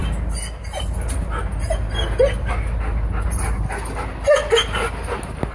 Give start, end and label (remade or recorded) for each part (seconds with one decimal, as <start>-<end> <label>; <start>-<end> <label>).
0.0-5.5 recorded